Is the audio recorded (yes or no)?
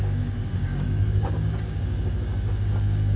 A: no